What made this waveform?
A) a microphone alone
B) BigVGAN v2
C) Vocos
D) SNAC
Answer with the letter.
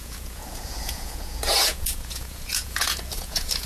C